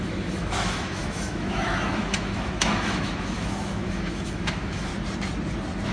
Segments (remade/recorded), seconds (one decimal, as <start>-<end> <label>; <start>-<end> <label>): 0.0-4.9 remade; 4.9-5.9 recorded